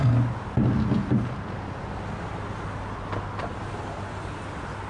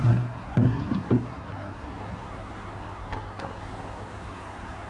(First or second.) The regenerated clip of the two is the second